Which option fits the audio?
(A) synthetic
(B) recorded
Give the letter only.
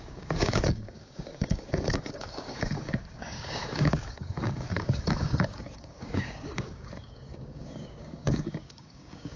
A